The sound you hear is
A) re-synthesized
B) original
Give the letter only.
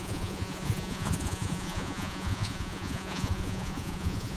A